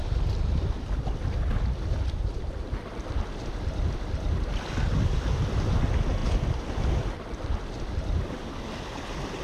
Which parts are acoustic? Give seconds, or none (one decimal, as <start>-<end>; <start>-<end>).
0.0-9.4